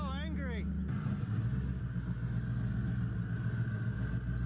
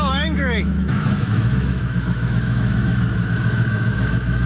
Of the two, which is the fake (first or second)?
second